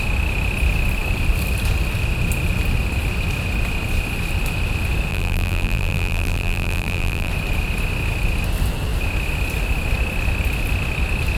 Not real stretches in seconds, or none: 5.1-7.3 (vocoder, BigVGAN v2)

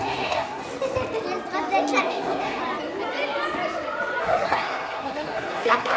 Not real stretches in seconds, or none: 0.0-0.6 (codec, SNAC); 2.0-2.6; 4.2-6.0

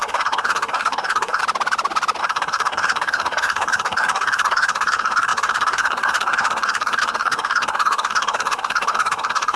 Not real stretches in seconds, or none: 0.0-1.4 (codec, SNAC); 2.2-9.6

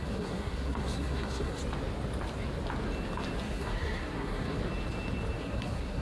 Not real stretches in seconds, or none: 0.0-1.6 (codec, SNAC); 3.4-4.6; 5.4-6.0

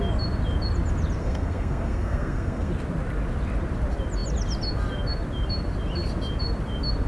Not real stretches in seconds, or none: 1.2-2.7 (codec, SNAC)

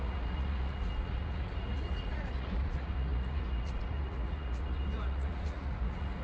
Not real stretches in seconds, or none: 0.0-6.2 (vocoder, Vocos)

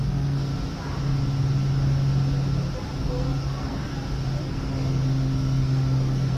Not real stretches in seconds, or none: 0.0-0.5 (codec, SNAC); 3.0-3.9; 4.4-6.4